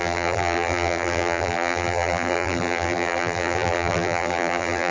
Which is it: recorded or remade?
remade